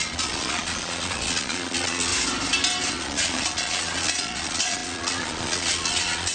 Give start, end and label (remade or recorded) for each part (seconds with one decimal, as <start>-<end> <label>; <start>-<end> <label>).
0.0-2.1 remade; 2.1-2.9 recorded; 2.9-6.3 remade